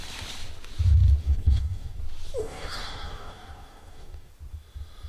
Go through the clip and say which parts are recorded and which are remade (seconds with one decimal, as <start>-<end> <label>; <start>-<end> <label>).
0.0-1.2 recorded; 1.2-2.0 remade; 2.0-2.4 recorded; 2.4-4.3 remade; 4.3-5.1 recorded